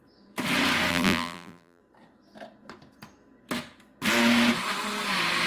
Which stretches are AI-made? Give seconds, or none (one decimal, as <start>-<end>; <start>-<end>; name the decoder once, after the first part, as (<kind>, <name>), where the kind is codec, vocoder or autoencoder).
0.9-1.8 (vocoder, BigVGAN v2)